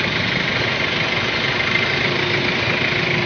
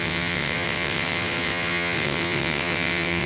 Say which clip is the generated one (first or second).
second